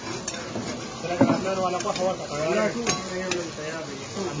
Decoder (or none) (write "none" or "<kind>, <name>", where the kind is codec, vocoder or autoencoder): none